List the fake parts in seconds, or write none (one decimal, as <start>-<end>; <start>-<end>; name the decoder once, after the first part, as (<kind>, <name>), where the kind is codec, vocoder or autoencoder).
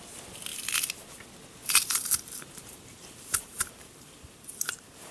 1.6-5.1 (vocoder, BigVGAN v2)